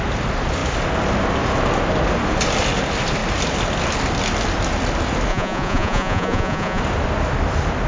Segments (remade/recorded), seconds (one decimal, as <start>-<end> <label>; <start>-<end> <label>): 0.0-5.3 recorded; 5.3-6.8 remade; 6.8-7.9 recorded